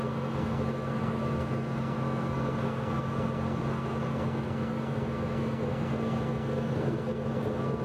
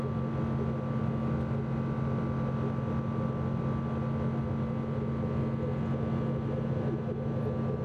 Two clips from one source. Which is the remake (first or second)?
first